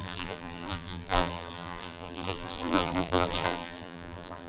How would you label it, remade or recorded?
remade